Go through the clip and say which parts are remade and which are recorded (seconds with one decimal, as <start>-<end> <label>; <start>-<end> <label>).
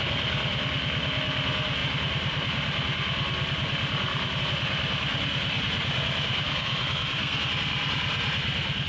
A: 0.0-6.3 recorded; 6.3-7.5 remade; 7.5-8.9 recorded